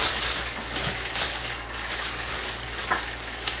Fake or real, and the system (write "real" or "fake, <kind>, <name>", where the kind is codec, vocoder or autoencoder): fake, codec, DAC